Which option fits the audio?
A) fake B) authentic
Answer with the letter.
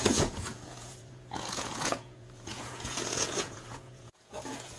A